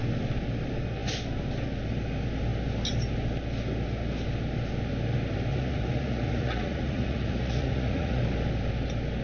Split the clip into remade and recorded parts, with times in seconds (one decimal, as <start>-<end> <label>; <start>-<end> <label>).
0.0-5.5 recorded; 5.5-8.2 remade; 8.2-9.2 recorded